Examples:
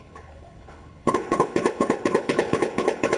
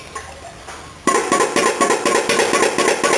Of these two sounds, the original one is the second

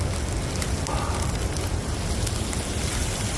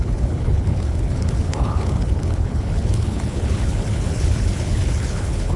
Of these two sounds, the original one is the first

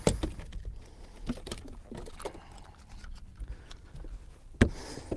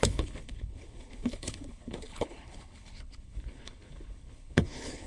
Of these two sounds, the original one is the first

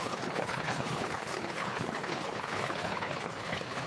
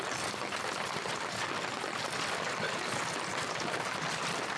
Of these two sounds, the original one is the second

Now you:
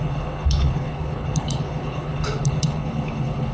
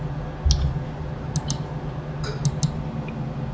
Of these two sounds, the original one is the second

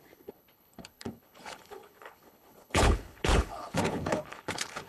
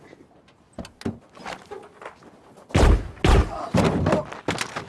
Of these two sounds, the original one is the second